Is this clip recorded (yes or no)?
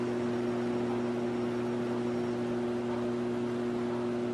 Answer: yes